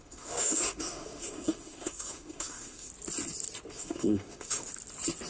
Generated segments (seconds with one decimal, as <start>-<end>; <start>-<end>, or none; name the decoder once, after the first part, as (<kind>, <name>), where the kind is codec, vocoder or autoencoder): 0.0-2.9 (autoencoder, DAC-VAE); 3.7-4.7